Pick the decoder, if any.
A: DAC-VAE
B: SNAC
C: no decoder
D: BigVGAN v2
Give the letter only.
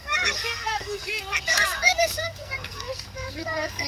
B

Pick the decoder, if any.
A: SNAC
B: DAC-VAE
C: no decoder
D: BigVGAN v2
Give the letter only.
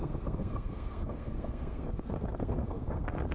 A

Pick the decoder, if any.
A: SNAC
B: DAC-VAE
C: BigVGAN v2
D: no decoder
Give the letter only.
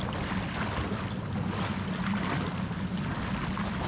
D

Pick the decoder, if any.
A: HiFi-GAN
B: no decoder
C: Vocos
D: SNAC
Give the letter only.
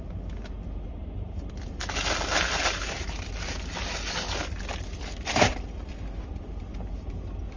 B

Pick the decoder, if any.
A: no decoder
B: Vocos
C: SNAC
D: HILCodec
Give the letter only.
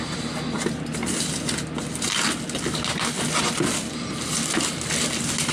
A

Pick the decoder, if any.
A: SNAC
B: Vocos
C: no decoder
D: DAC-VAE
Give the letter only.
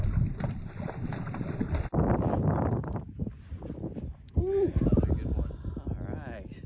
C